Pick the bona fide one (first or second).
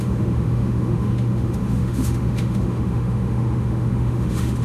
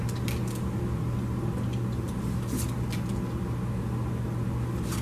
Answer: second